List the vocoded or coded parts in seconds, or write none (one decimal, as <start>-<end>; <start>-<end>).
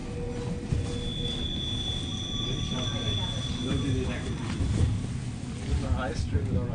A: none